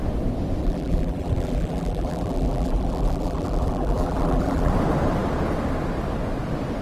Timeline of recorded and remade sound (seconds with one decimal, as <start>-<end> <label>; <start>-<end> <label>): 0.0-0.6 recorded; 0.6-4.7 remade; 4.7-6.8 recorded